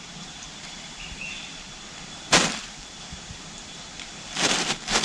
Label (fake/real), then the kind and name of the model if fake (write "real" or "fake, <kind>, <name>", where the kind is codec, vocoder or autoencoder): fake, vocoder, BigVGAN v2